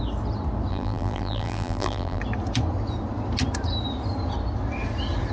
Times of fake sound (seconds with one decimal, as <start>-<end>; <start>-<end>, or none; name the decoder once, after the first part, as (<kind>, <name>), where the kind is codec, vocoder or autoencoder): 0.7-2.2 (vocoder, BigVGAN v2)